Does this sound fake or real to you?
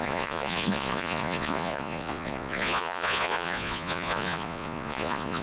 fake